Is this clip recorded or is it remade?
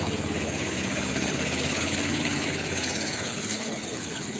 remade